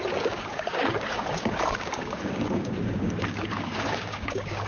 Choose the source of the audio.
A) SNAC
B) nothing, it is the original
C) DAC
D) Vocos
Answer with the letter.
C